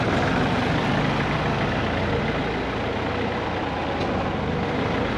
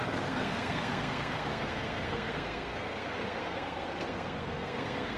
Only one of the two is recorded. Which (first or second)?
first